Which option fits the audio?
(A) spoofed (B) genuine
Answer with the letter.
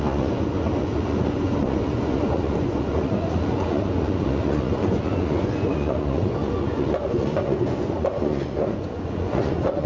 A